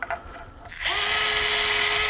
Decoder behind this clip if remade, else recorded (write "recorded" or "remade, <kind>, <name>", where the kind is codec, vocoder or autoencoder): recorded